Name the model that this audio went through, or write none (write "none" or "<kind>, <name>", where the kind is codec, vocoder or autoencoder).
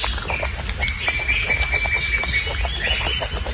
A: none